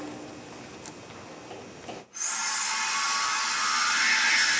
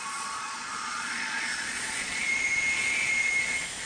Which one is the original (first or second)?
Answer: first